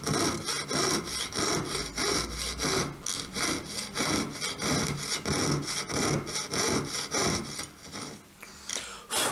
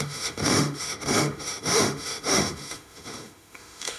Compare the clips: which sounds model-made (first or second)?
second